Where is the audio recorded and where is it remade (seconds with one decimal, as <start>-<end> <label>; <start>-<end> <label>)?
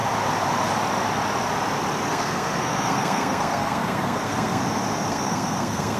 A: 0.0-2.1 recorded; 2.1-4.6 remade; 4.6-5.1 recorded; 5.1-6.0 remade